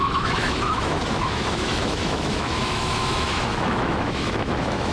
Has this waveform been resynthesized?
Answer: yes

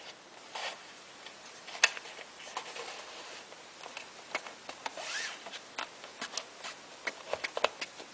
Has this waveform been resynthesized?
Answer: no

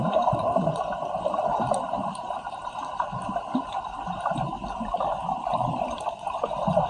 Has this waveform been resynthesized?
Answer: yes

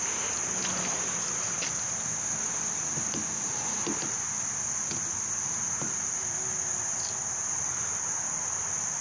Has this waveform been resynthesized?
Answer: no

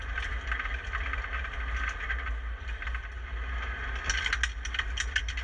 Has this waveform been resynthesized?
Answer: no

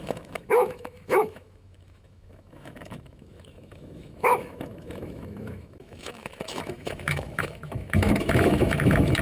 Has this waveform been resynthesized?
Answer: yes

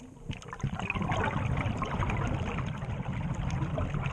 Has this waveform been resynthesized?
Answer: no